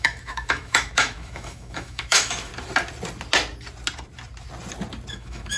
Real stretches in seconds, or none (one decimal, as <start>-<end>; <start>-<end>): 2.5-5.1